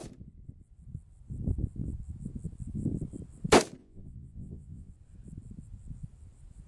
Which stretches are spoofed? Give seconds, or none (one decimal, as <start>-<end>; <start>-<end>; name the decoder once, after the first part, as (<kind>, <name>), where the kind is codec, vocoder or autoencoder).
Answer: 3.8-4.9 (vocoder, Vocos)